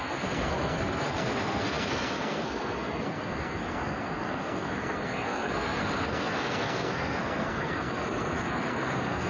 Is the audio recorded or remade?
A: remade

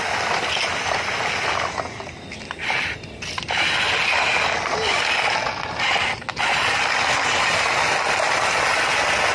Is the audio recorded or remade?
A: recorded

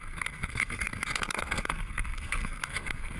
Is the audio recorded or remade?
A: remade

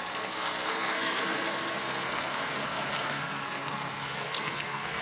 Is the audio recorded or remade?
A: remade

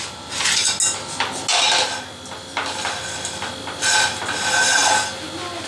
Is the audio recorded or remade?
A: recorded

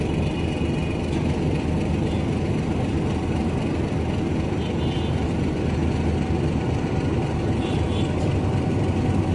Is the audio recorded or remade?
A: recorded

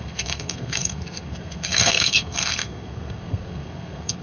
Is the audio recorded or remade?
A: remade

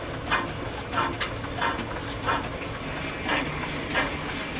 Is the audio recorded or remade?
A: recorded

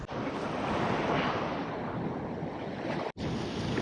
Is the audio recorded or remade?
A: recorded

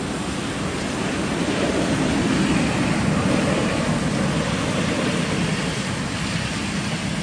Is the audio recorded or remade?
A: recorded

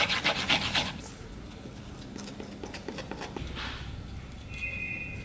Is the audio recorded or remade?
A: recorded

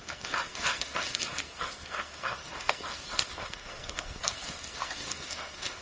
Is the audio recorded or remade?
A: remade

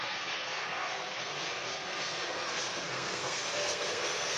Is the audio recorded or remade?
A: remade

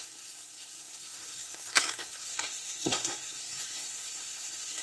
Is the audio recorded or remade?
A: remade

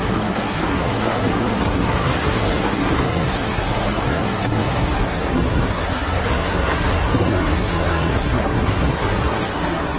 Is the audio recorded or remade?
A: remade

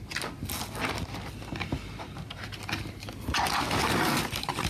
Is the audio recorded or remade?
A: recorded